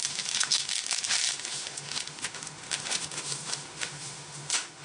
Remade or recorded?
remade